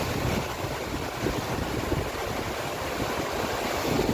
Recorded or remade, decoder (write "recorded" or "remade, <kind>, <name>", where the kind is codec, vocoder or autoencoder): recorded